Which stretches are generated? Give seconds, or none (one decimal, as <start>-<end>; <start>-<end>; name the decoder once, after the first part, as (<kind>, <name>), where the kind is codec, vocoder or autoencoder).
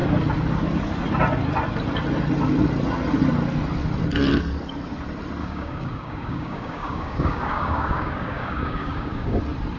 5.4-9.4 (codec, DAC)